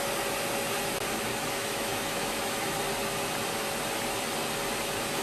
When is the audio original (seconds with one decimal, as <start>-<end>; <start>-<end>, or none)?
0.0-1.3; 2.8-5.2